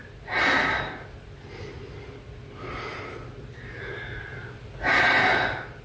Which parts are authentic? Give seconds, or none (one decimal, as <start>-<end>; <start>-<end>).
0.0-5.8